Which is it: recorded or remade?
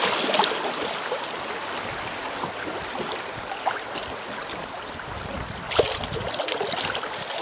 recorded